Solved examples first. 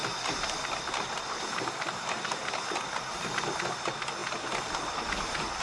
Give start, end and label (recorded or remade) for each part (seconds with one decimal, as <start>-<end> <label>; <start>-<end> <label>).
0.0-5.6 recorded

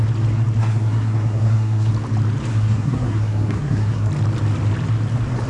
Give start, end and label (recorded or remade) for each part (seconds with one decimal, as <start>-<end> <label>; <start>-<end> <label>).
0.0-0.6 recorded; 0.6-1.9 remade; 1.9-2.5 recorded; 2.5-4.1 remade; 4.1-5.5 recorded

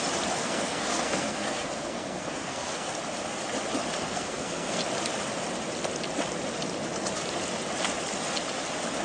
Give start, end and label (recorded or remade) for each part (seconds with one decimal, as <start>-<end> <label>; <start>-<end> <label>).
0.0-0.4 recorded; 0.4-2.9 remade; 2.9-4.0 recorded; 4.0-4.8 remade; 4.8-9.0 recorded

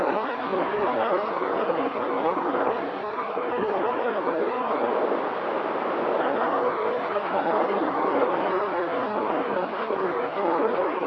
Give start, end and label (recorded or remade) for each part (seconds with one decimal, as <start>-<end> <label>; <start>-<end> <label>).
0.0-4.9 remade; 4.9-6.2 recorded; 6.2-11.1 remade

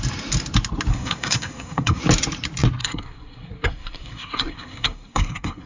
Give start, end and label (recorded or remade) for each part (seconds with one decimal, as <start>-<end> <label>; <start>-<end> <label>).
0.0-0.9 recorded; 0.9-2.0 remade; 2.0-2.8 recorded; 2.8-5.7 remade

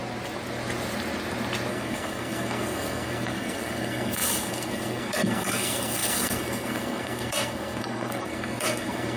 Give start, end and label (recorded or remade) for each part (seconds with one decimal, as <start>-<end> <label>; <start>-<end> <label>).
0.0-1.7 recorded; 1.7-9.2 remade